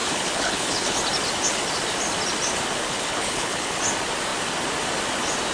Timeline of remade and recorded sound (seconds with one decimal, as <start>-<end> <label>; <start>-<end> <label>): 0.0-1.0 remade; 1.0-2.9 recorded; 2.9-3.8 remade; 3.8-5.5 recorded